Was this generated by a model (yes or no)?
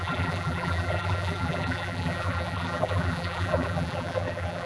yes